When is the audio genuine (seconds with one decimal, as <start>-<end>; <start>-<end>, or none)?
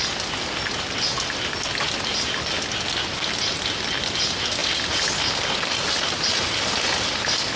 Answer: 0.0-7.6